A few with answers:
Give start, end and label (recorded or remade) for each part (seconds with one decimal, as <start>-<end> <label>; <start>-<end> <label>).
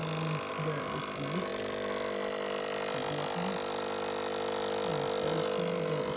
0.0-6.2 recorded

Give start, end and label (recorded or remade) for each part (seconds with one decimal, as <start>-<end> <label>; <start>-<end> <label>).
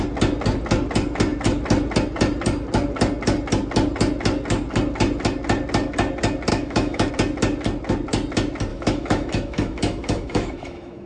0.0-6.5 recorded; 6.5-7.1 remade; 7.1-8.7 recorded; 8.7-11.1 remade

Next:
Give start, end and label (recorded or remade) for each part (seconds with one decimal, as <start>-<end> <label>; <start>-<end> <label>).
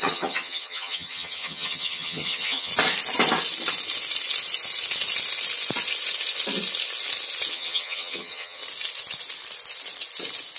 0.0-2.7 remade; 2.7-7.5 recorded; 7.5-8.6 remade; 8.6-10.6 recorded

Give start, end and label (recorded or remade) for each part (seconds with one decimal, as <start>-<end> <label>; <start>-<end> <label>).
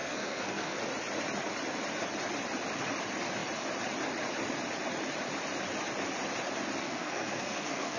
0.0-0.8 remade; 0.8-6.8 recorded; 6.8-8.0 remade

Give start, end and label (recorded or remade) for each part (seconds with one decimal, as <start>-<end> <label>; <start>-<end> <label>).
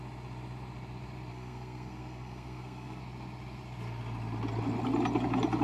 0.0-1.3 recorded; 1.3-3.0 remade; 3.0-5.6 recorded